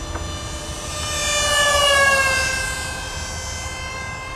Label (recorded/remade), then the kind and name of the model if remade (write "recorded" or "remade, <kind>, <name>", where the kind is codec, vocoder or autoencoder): recorded